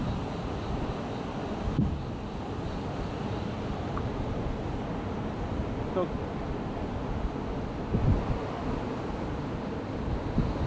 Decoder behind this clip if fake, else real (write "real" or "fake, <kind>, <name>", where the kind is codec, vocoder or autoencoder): real